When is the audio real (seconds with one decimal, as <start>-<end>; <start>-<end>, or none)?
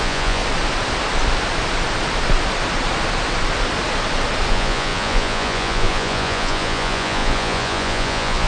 0.4-4.5